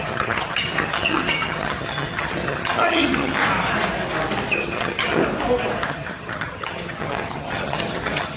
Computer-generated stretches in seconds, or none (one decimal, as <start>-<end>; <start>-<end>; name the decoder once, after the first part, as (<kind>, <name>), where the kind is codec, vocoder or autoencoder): 0.0-3.4 (vocoder, HiFi-GAN); 4.5-5.2; 5.9-8.4

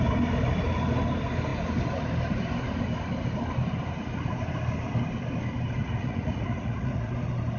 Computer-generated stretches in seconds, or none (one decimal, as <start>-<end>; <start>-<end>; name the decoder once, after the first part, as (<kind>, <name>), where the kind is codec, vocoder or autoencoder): 5.8-7.1 (vocoder, Vocos)

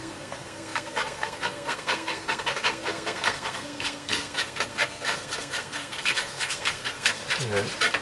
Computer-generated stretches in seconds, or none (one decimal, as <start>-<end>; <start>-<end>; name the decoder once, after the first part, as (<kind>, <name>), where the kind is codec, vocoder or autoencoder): 0.0-7.2 (codec, SNAC)

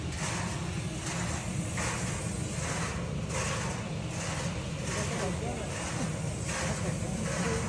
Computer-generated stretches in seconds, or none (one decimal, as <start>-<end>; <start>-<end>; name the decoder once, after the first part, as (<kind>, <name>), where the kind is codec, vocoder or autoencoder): none

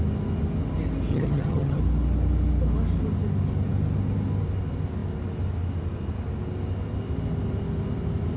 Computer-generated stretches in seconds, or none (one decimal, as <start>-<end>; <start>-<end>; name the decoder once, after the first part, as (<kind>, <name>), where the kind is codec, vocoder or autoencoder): 1.1-1.8 (vocoder, HiFi-GAN)

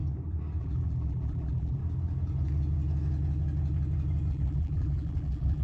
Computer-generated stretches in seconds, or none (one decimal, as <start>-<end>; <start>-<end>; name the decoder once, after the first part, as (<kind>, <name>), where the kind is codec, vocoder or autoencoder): 0.6-1.8 (vocoder, BigVGAN v2); 4.3-5.6

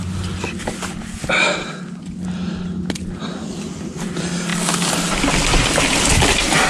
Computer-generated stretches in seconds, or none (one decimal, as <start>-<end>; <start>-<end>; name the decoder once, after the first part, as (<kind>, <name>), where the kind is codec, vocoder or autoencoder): none